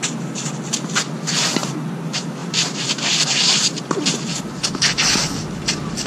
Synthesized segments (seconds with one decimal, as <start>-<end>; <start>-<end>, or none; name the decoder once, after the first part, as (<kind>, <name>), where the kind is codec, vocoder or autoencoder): 2.4-6.1 (vocoder, BigVGAN v2)